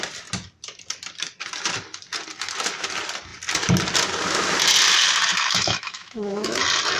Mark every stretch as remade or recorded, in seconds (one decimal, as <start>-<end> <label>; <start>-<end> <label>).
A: 0.0-5.3 recorded; 5.3-6.6 remade; 6.6-7.0 recorded